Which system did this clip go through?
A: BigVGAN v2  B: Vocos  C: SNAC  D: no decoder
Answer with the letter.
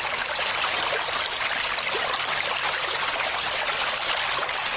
D